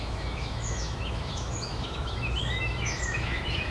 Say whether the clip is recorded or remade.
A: remade